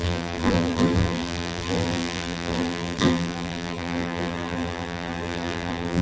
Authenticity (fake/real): fake